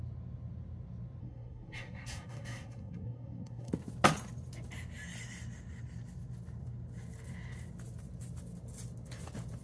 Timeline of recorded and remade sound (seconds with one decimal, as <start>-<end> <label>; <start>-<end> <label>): 0.0-1.2 recorded; 1.2-3.7 remade; 3.7-9.6 recorded